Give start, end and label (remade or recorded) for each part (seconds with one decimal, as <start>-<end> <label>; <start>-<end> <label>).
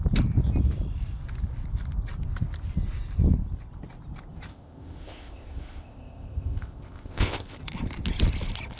0.0-4.5 recorded; 4.5-7.6 remade; 7.6-8.8 recorded